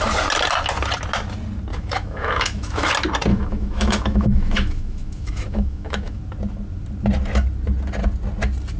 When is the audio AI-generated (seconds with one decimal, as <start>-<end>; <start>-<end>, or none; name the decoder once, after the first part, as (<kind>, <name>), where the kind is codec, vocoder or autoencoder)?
1.7-2.9 (autoencoder, DAC-VAE); 3.3-6.2